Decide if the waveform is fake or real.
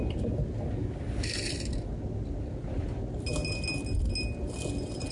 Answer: real